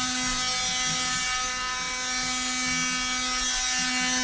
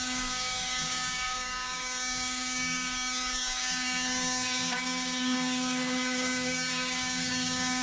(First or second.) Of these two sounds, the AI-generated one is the second